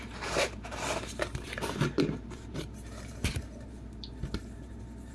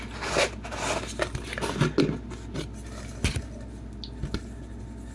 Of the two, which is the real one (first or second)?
second